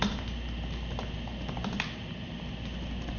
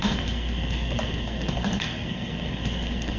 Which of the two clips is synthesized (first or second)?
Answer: second